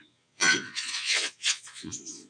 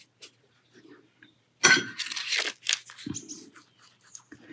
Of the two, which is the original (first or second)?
second